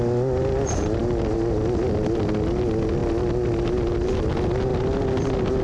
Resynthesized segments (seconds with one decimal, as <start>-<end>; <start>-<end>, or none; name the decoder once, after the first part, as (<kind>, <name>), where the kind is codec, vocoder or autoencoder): none